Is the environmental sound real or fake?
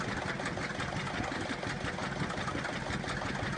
real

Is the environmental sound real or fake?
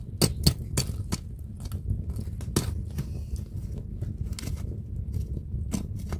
real